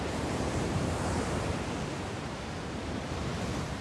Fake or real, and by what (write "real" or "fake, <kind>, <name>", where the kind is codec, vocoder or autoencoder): fake, vocoder, BigVGAN v2